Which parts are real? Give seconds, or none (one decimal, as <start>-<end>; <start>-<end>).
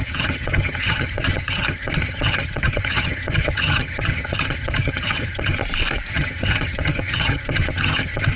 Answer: 5.6-6.1